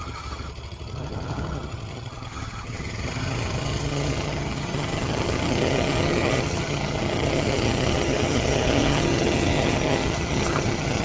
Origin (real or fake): fake